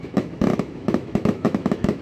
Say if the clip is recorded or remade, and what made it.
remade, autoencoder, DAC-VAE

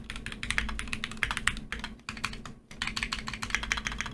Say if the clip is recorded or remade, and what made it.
recorded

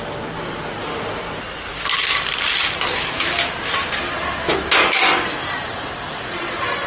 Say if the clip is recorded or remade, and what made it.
recorded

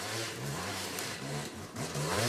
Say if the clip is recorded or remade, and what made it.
remade, vocoder, BigVGAN v2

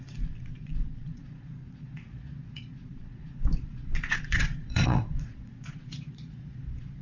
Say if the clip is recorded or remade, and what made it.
remade, vocoder, Vocos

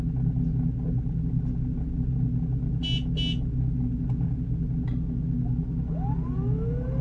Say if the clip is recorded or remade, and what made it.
recorded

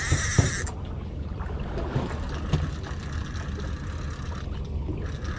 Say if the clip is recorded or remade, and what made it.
recorded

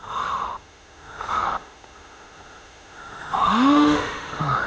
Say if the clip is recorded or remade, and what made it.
remade, autoencoder, DAC-VAE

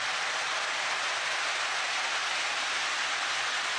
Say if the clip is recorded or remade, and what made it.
recorded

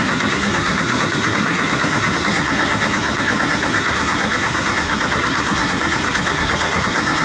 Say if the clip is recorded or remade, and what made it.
remade, codec, SNAC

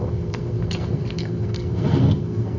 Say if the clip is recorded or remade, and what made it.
remade, codec, SNAC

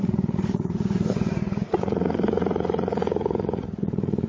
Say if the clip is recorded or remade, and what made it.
remade, vocoder, Vocos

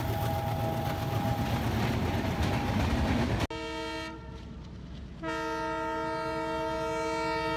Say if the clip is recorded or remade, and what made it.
recorded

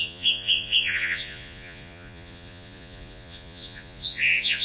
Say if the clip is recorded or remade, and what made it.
remade, vocoder, Vocos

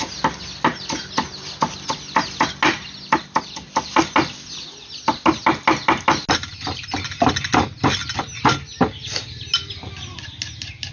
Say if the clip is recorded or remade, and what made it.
recorded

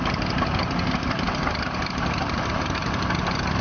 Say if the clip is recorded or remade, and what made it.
recorded